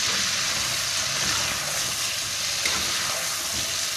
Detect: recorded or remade recorded